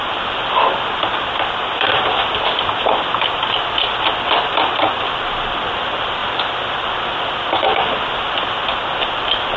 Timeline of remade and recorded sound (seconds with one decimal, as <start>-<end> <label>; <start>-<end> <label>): 0.0-6.2 remade; 6.2-7.1 recorded; 7.1-9.6 remade